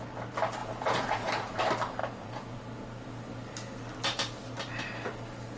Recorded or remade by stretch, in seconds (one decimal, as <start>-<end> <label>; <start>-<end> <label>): 0.0-0.6 recorded; 0.6-1.6 remade; 1.6-2.0 recorded; 2.0-2.6 remade; 2.6-5.6 recorded